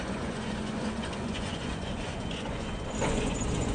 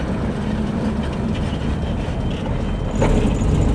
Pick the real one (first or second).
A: second